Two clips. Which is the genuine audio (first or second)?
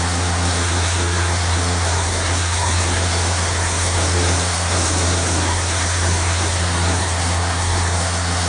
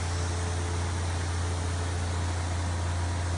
second